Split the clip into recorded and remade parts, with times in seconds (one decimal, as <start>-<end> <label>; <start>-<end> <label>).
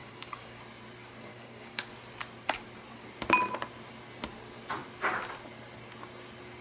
0.0-0.6 remade; 0.6-1.3 recorded; 1.3-1.9 remade; 1.9-6.6 recorded